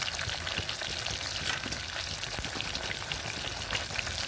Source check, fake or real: real